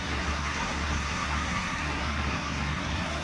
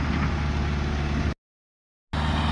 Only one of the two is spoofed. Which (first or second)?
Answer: first